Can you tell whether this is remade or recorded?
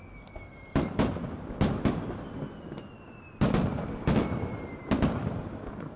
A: recorded